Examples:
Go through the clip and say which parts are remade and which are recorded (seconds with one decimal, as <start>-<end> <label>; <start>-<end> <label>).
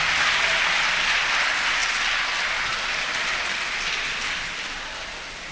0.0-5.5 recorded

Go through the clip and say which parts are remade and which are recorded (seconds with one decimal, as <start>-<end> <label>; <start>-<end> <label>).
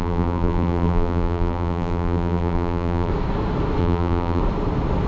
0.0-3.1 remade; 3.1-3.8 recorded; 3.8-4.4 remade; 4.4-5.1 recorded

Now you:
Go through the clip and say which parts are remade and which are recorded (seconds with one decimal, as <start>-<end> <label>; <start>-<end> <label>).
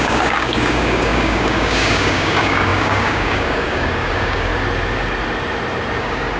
0.0-4.5 remade; 4.5-6.0 recorded; 6.0-6.4 remade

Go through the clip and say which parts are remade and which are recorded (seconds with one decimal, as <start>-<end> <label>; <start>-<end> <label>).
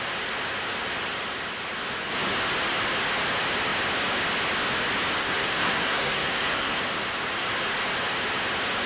0.0-5.2 recorded; 5.2-6.8 remade; 6.8-8.9 recorded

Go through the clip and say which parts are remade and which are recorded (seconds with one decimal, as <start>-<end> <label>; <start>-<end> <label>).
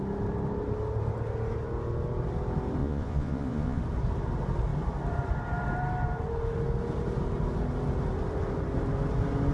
0.0-2.8 recorded; 2.8-3.8 remade; 3.8-9.5 recorded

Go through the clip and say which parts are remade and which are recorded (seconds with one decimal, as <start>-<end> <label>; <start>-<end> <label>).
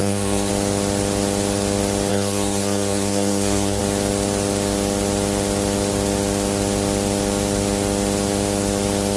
0.0-0.5 remade; 0.5-2.1 recorded; 2.1-3.8 remade; 3.8-9.2 recorded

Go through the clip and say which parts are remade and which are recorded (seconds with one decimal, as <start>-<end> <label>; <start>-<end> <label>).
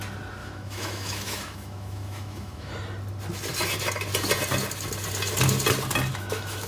0.0-0.4 recorded; 0.4-2.7 remade; 2.7-6.1 recorded; 6.1-6.7 remade